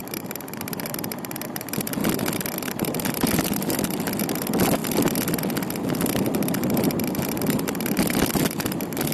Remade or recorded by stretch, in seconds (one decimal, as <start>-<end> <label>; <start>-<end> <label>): 0.0-9.1 recorded